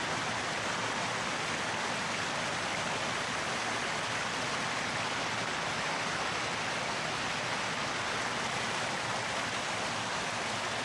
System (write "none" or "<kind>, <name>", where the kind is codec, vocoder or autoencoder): none